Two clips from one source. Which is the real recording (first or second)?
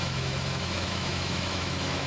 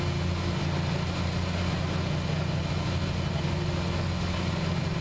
second